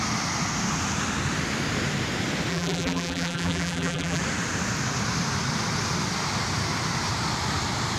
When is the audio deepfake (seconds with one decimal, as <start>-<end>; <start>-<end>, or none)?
2.5-4.2